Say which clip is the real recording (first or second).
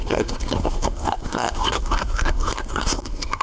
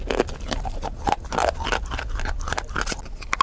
second